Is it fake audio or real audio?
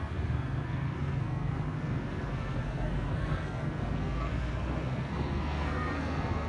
fake